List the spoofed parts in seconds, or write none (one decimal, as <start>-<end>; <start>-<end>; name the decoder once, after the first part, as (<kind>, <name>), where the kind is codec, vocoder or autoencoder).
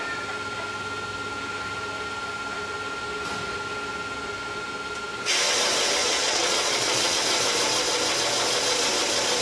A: 6.0-7.2 (vocoder, Vocos)